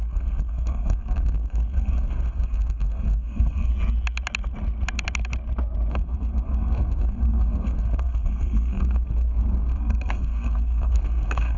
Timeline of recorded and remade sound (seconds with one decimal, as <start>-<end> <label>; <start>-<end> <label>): 0.0-3.7 remade; 3.7-5.9 recorded; 5.9-11.6 remade